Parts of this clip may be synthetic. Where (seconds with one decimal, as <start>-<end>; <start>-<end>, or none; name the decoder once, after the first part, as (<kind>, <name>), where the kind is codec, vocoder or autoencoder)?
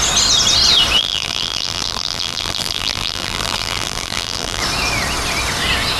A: 1.0-4.6 (vocoder, BigVGAN v2)